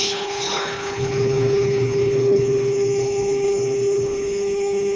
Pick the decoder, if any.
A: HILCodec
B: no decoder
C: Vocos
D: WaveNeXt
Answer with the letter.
A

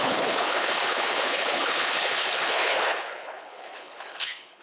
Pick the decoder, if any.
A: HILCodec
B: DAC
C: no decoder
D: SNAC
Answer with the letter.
A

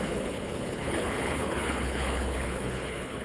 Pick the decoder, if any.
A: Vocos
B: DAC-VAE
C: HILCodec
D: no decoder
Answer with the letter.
C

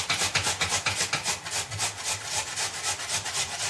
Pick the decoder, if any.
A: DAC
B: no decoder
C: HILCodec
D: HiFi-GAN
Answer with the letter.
B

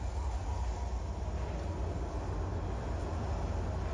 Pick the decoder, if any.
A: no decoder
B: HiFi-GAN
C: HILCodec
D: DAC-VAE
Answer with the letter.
A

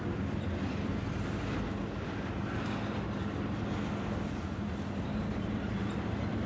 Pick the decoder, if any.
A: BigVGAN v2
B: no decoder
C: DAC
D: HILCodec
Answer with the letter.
B